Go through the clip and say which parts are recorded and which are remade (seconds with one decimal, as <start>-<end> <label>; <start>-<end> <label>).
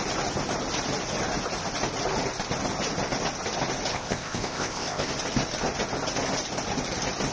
0.0-3.9 recorded; 3.9-5.1 remade; 5.1-7.3 recorded